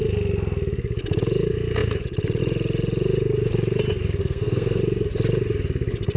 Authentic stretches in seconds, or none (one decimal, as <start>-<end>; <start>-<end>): 0.0-4.2; 4.8-6.2